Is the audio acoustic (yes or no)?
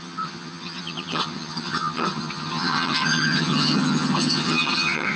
no